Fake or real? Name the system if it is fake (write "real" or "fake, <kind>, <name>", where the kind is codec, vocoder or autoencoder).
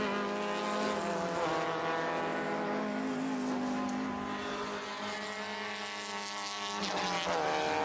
real